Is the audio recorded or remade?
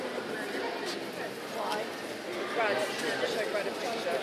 recorded